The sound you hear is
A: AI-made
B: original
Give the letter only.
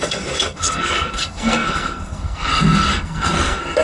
A